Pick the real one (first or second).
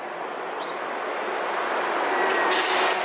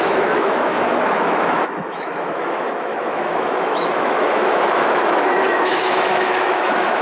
first